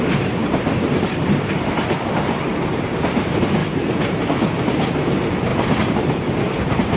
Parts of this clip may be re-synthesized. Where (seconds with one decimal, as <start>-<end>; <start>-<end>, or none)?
0.0-3.6; 4.1-7.0